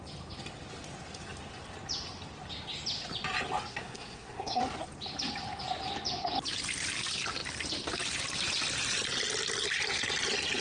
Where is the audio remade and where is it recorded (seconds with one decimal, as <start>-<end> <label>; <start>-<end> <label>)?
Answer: 0.0-3.7 recorded; 3.7-4.6 remade; 4.6-10.6 recorded

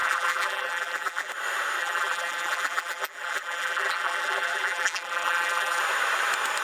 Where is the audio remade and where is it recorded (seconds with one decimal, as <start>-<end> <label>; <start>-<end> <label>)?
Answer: 0.0-1.3 remade; 1.3-1.8 recorded; 1.8-5.8 remade; 5.8-6.6 recorded

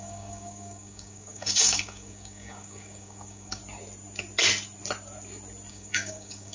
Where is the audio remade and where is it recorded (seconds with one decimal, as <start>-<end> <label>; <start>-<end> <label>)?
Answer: 0.0-3.6 remade; 3.6-5.7 recorded; 5.7-6.5 remade

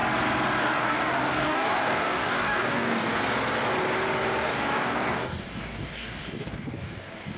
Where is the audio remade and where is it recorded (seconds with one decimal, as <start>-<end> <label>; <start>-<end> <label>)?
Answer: 0.0-0.6 recorded; 0.6-3.1 remade; 3.1-4.4 recorded; 4.4-7.4 remade

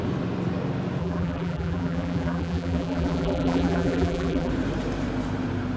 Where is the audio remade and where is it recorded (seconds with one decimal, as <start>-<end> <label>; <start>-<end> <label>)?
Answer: 0.0-1.0 recorded; 1.0-4.5 remade; 4.5-5.8 recorded

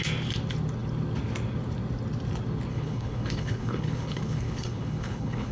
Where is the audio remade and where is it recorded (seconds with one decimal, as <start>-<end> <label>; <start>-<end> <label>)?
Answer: 0.0-2.7 recorded; 2.7-5.5 remade

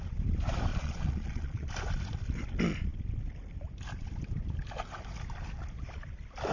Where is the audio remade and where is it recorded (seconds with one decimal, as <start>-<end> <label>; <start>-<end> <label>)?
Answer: 0.0-0.7 recorded; 0.7-1.7 remade; 1.7-6.5 recorded

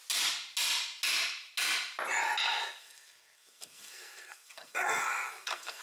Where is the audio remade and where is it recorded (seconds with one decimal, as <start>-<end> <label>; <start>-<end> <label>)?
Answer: 0.0-2.8 recorded; 2.8-5.8 remade